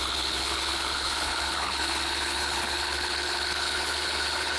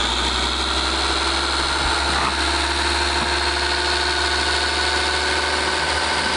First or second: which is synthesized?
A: first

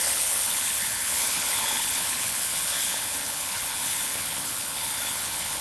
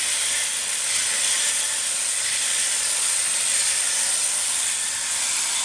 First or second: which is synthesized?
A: first